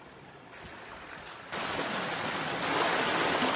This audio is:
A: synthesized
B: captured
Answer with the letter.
B